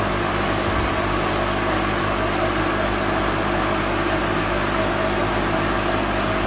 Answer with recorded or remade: recorded